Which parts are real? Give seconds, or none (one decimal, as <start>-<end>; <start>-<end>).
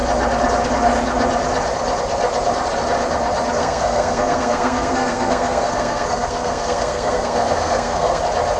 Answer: 0.0-3.6; 8.2-8.6